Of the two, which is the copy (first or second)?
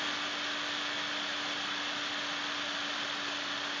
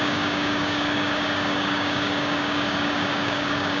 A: second